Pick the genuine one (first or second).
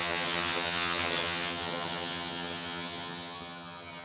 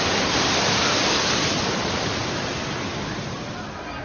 second